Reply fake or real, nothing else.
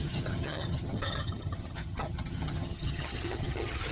fake